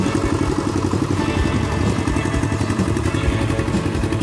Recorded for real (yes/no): yes